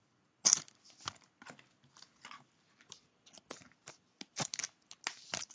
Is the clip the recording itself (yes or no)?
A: yes